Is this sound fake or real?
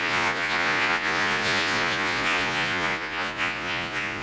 fake